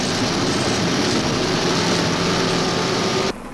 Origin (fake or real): real